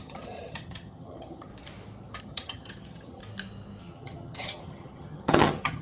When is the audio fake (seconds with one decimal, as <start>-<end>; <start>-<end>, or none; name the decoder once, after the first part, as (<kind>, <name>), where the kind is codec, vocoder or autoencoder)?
0.0-1.5 (vocoder, HiFi-GAN); 2.2-3.2; 3.8-5.8